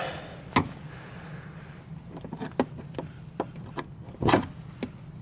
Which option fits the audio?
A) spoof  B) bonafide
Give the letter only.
B